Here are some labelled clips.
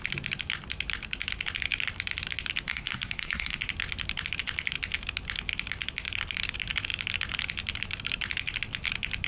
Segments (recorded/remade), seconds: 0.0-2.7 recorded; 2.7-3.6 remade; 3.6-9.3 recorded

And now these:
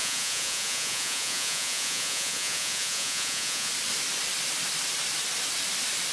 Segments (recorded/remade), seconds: 0.0-3.7 remade; 3.7-6.1 recorded

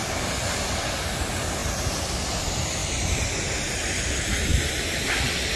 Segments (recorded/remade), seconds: 0.0-1.6 recorded; 1.6-2.4 remade; 2.4-4.5 recorded; 4.5-5.0 remade; 5.0-5.6 recorded

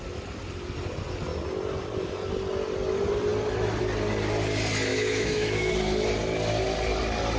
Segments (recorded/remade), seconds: 0.0-4.9 recorded; 4.9-5.7 remade; 5.7-7.4 recorded

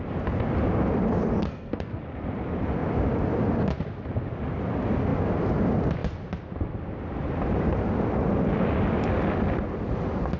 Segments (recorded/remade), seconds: 0.0-1.4 recorded; 1.4-2.0 remade; 2.0-10.4 recorded